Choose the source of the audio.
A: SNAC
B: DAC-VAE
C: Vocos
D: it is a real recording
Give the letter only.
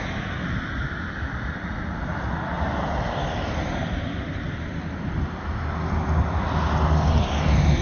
D